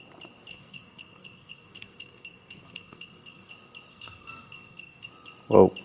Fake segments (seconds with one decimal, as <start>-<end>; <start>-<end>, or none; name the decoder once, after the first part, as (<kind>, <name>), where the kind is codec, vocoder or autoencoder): 0.5-3.5 (codec, SNAC); 3.9-5.1

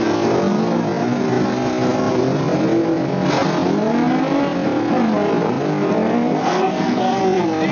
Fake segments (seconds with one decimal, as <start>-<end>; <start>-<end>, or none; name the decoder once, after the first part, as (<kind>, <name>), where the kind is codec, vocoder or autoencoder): 6.3-7.2 (codec, SNAC)

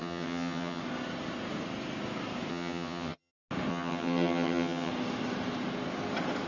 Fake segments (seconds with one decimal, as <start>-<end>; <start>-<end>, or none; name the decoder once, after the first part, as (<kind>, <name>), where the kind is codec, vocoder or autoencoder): 0.0-0.8 (vocoder, HiFi-GAN); 2.5-3.3; 3.7-4.9

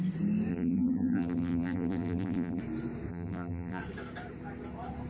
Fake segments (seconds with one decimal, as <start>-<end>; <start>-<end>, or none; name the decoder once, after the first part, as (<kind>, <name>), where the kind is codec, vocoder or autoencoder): 0.5-2.6 (vocoder, BigVGAN v2); 3.1-3.8

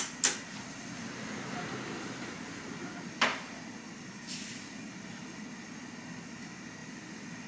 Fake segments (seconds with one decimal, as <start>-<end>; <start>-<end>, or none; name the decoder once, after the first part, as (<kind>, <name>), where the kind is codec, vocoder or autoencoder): 3.3-5.0 (vocoder, BigVGAN v2); 6.8-7.5